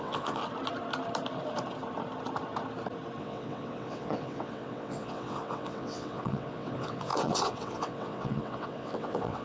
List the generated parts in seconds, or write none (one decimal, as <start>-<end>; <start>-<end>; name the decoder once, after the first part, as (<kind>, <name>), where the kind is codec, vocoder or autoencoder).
0.0-0.4 (vocoder, WaveNeXt); 3.2-9.4